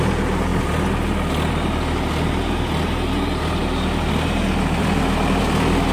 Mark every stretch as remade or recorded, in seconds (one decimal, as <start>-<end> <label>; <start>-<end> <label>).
0.0-5.9 recorded